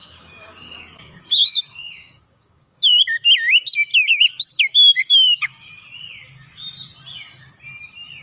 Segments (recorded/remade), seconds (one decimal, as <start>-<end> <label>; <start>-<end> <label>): 0.0-3.0 remade; 3.0-3.9 recorded; 3.9-5.7 remade; 5.7-8.2 recorded